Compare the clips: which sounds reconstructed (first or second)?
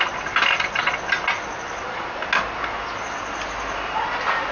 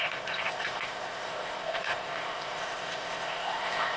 second